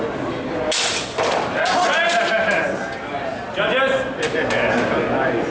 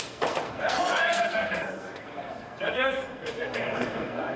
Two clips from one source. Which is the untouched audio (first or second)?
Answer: first